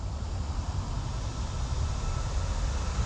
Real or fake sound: real